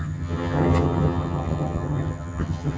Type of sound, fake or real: fake